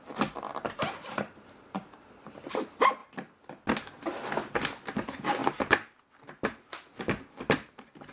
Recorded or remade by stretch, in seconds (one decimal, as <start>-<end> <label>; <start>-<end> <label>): 0.0-0.5 recorded; 0.5-2.1 remade; 2.1-8.1 recorded